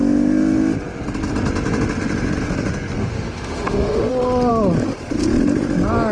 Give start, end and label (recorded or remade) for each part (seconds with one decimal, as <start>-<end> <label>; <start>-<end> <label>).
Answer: 0.0-3.0 recorded; 3.0-4.1 remade; 4.1-6.1 recorded